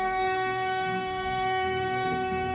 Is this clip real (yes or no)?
no